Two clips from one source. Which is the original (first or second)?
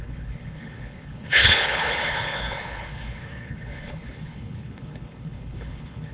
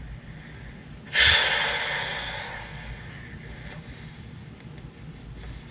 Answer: second